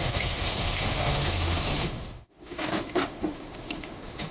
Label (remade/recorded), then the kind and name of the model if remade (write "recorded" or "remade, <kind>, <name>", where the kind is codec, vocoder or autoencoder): remade, autoencoder, DAC-VAE